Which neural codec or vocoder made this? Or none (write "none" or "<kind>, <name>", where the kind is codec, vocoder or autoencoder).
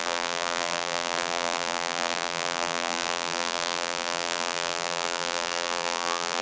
vocoder, BigVGAN v2